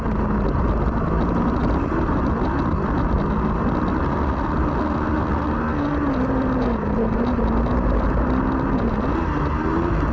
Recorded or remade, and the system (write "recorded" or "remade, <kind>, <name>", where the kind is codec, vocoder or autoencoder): recorded